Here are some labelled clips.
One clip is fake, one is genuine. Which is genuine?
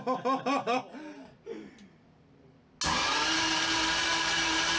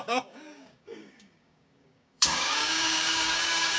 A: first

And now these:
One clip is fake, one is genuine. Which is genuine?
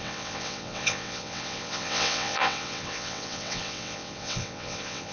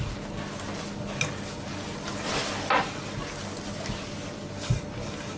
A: second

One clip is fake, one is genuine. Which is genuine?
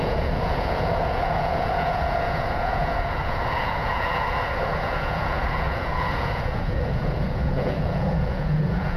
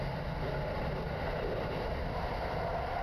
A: second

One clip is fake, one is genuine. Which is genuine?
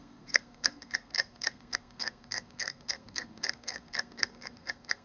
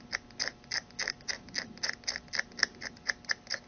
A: second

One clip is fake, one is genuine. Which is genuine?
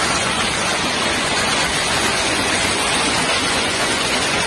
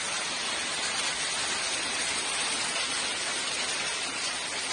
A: second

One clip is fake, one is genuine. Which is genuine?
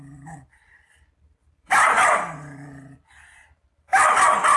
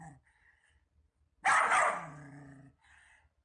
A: second